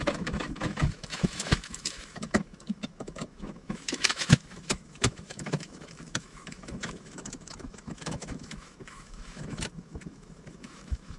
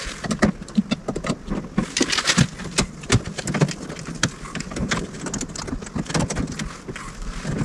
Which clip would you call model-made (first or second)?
first